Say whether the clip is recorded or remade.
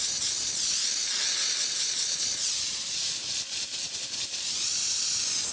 recorded